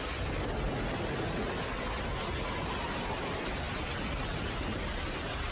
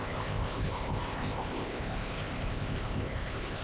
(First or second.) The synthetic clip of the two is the second